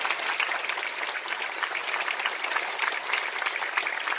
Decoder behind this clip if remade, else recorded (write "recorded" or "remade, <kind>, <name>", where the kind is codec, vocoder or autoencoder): recorded